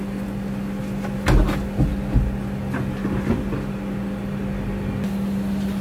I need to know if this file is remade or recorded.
recorded